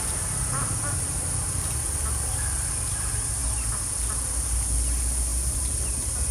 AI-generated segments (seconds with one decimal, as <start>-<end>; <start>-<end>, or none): none